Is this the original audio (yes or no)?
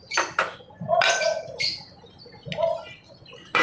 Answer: yes